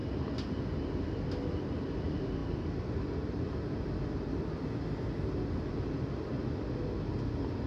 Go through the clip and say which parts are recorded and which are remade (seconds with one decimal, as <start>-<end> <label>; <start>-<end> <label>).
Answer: 0.0-7.7 recorded